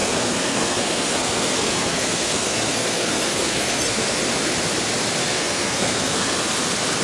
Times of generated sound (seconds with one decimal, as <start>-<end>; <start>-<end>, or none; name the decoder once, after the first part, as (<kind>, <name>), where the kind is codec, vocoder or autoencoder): 0.0-4.2 (codec, SNAC); 5.2-6.4